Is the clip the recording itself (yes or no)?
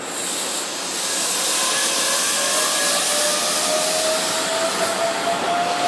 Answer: yes